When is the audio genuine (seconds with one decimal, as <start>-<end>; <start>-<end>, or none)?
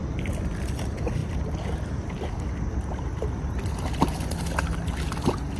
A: 0.0-5.6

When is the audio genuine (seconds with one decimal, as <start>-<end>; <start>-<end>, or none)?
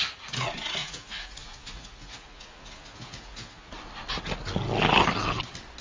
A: 0.0-0.8; 3.7-5.8